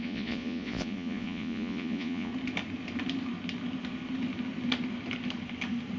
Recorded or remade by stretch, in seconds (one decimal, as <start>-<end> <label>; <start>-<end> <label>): 0.0-2.3 remade; 2.3-6.0 recorded